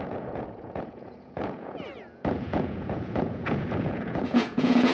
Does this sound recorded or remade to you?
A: remade